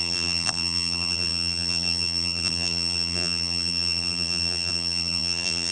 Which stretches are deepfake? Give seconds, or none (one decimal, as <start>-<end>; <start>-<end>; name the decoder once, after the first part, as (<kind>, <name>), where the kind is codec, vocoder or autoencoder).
0.0-5.7 (vocoder, BigVGAN v2)